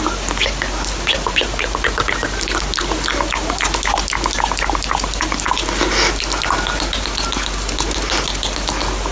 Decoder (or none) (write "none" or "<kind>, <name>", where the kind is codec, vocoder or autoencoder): none